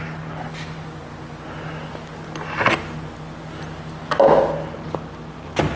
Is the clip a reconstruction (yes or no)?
no